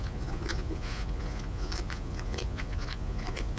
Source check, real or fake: fake